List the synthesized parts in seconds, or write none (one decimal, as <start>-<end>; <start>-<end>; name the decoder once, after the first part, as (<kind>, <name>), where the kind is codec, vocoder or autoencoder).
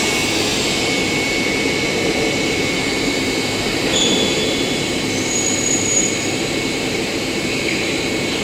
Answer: none